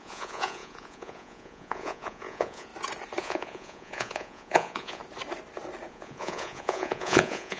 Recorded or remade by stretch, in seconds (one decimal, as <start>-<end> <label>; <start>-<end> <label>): 0.0-2.7 remade; 2.7-3.2 recorded; 3.2-5.0 remade; 5.0-5.9 recorded; 5.9-7.6 remade